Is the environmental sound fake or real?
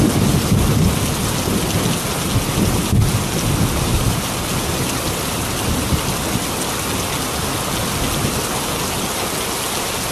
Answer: real